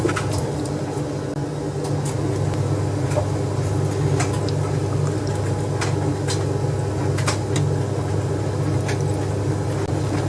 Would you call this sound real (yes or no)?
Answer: yes